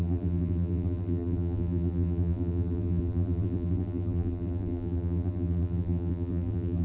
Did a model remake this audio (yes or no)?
yes